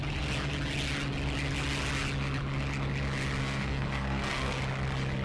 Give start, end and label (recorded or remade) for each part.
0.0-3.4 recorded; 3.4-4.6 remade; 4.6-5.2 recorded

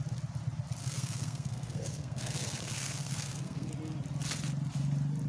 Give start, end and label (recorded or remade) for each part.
0.0-0.8 recorded; 0.8-3.7 remade; 3.7-5.3 recorded

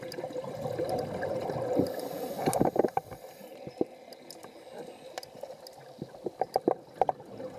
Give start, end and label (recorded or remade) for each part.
0.0-7.6 recorded

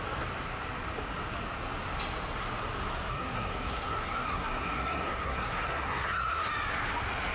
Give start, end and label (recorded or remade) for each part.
0.0-3.1 recorded; 3.1-6.5 remade; 6.5-7.3 recorded

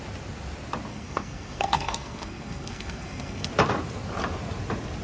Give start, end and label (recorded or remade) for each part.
0.0-0.9 recorded; 0.9-3.5 remade; 3.5-5.0 recorded

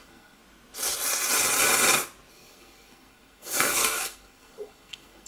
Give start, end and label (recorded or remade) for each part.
0.0-0.4 remade; 0.4-2.3 recorded; 2.3-5.3 remade

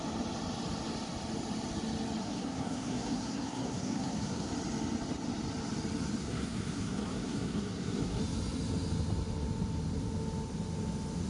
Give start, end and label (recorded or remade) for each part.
0.0-2.2 recorded; 2.2-4.5 remade; 4.5-6.2 recorded; 6.2-8.2 remade; 8.2-11.3 recorded